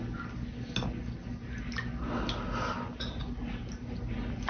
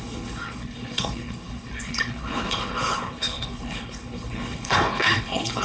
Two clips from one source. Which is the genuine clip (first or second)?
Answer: first